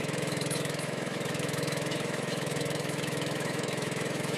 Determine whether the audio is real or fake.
fake